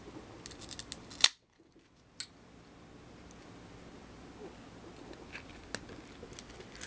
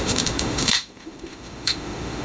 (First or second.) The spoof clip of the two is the second